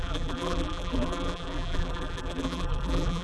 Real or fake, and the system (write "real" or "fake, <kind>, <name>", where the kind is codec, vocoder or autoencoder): fake, vocoder, BigVGAN v2